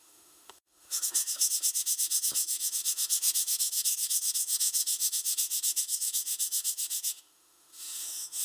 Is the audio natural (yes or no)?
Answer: no